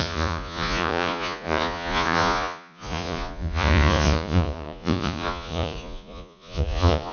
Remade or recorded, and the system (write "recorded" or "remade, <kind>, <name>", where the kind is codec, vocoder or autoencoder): remade, vocoder, Vocos